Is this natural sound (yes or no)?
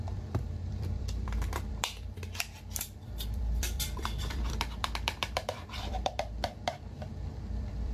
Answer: no